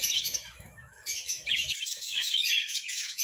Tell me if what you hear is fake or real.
fake